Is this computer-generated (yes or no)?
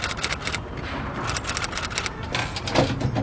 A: no